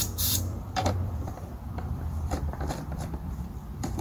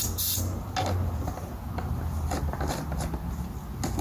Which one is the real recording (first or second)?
second